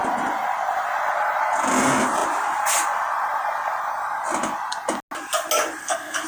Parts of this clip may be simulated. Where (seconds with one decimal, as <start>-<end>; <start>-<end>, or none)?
5.8-6.3